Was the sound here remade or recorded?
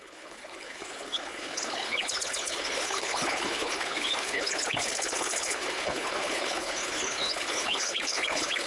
remade